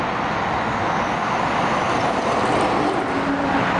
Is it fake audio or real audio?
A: real